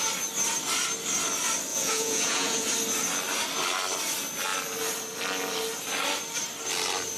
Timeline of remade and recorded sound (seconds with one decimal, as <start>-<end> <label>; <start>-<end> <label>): 0.0-1.7 recorded; 1.7-2.7 remade; 2.7-7.2 recorded